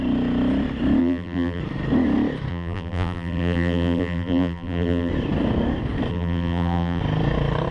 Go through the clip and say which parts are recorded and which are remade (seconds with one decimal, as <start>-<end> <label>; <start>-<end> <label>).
0.0-1.0 recorded; 1.0-1.6 remade; 1.6-2.5 recorded; 2.5-5.1 remade; 5.1-6.1 recorded; 6.1-7.0 remade; 7.0-7.7 recorded